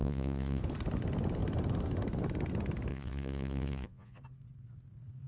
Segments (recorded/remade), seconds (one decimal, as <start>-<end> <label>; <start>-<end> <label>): 0.0-0.6 remade; 0.6-2.9 recorded; 2.9-4.2 remade; 4.2-5.3 recorded